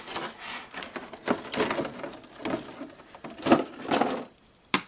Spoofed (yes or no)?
no